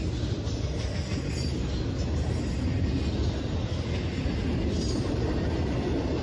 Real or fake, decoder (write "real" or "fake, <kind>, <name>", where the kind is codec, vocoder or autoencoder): real